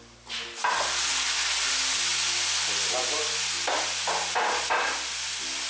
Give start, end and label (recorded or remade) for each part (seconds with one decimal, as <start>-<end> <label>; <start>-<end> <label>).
0.0-5.7 recorded